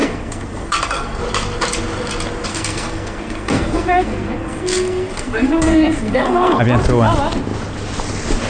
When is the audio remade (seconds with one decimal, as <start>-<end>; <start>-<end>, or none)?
0.0-1.2; 2.5-6.6